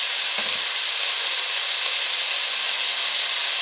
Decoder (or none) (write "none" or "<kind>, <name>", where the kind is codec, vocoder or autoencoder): none